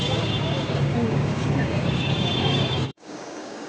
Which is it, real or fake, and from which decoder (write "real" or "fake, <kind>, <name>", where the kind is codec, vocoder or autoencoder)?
fake, codec, DAC